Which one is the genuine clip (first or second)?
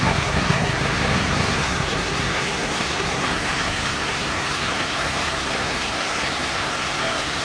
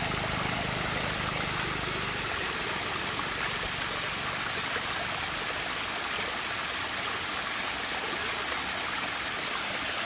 second